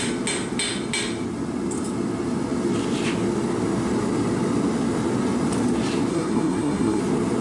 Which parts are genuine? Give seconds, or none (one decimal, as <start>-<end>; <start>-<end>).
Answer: 0.0-6.1; 7.0-7.4